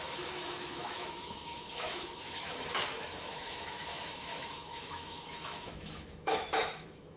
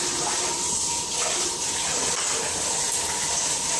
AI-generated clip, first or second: first